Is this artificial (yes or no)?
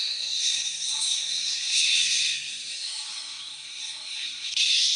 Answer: yes